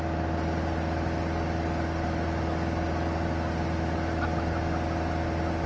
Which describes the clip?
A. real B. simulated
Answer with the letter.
A